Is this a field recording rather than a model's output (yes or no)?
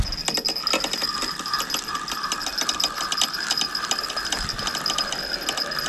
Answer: yes